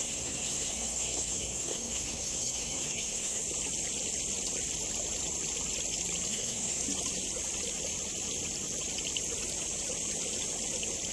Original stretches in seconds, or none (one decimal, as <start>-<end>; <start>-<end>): 3.4-6.3; 6.8-11.1

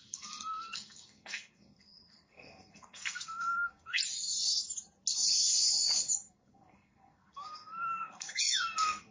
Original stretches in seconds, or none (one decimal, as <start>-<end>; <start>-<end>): 4.0-6.3

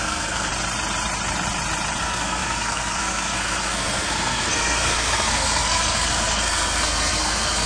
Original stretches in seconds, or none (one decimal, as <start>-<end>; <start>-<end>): 0.5-2.0